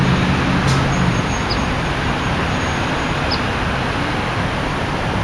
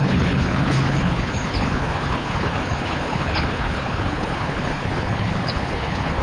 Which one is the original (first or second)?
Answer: first